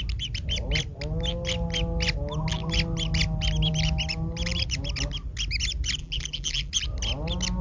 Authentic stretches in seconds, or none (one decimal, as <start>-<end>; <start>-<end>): 0.0-6.0; 6.7-7.6